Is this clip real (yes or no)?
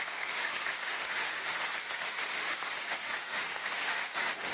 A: no